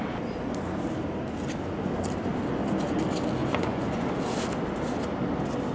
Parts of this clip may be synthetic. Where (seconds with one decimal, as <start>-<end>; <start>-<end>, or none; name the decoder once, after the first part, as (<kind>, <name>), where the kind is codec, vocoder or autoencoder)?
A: 3.4-4.2 (vocoder, Vocos)